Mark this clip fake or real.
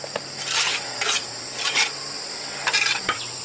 real